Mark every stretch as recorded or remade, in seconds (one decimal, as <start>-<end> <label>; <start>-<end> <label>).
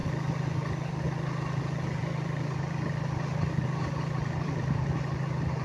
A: 0.0-2.0 recorded; 2.0-4.9 remade; 4.9-5.6 recorded